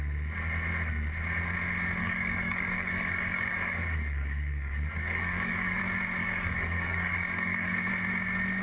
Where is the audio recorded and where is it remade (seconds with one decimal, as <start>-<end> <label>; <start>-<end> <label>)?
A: 0.0-2.0 recorded; 2.0-5.8 remade; 5.8-6.2 recorded; 6.2-7.9 remade; 7.9-8.6 recorded